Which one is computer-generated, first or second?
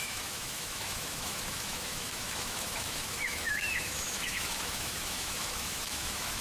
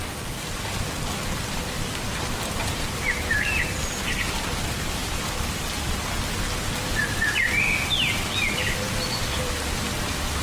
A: first